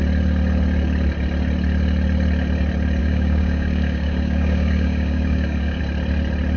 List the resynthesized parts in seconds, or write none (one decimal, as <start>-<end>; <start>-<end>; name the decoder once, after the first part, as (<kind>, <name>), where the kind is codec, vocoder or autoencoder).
3.0-5.8 (codec, DAC)